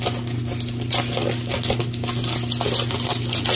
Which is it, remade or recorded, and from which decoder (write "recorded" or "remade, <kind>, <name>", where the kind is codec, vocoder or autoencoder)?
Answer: recorded